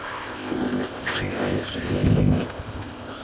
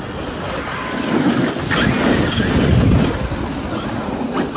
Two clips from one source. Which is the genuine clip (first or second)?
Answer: second